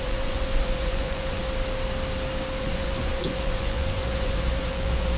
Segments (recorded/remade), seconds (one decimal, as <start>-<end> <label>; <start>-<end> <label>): 0.0-1.4 remade; 1.4-2.6 recorded; 2.6-5.2 remade